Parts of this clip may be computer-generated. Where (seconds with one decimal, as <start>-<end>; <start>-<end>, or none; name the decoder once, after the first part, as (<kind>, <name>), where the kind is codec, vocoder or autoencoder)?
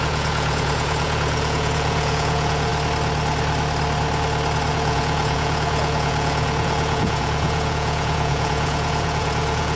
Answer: 0.0-2.7 (vocoder, Vocos); 4.7-9.8